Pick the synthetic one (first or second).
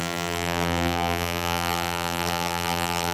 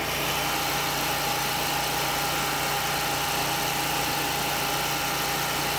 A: first